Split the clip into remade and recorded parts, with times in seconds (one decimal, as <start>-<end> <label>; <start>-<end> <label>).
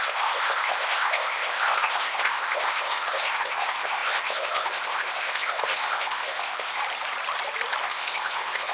0.0-6.8 remade; 6.8-7.8 recorded; 7.8-8.7 remade